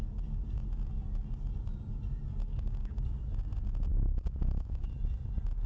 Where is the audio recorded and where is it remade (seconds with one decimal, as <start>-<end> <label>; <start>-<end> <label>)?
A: 0.0-2.5 recorded; 2.5-3.0 remade; 3.0-3.9 recorded; 3.9-4.9 remade; 4.9-5.7 recorded